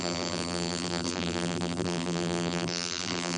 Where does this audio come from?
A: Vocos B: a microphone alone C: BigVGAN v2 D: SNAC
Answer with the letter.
C